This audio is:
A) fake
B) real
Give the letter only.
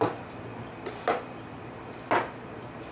B